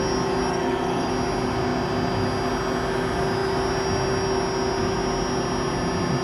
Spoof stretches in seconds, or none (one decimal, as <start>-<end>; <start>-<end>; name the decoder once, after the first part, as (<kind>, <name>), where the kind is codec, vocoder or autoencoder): 0.5-1.1 (codec, SNAC)